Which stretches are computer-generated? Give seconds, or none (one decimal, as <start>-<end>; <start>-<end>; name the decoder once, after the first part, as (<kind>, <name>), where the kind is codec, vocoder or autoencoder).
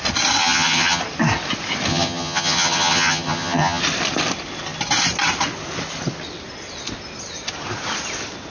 0.4-1.0 (vocoder, HiFi-GAN); 1.9-3.8